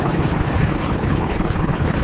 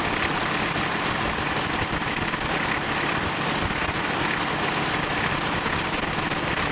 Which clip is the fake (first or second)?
first